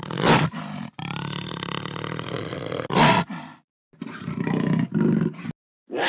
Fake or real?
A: real